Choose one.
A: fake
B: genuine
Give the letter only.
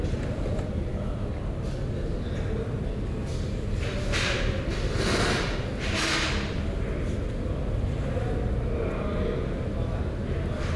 B